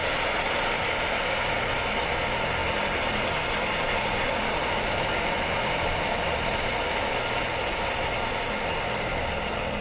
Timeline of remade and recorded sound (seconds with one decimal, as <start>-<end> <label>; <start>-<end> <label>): 0.0-1.7 remade; 1.7-2.6 recorded; 2.6-7.1 remade; 7.1-9.8 recorded